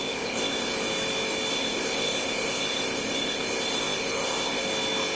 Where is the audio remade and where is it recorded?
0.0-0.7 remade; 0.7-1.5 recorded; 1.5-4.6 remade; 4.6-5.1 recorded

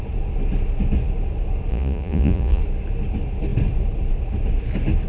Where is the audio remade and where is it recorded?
0.0-1.7 recorded; 1.7-2.6 remade; 2.6-5.1 recorded

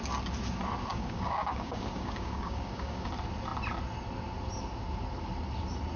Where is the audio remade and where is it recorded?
0.0-0.9 recorded; 0.9-3.1 remade; 3.1-6.0 recorded

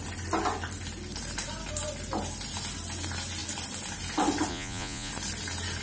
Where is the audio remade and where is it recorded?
0.0-4.5 recorded; 4.5-5.1 remade; 5.1-5.8 recorded